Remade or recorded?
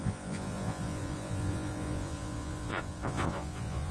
remade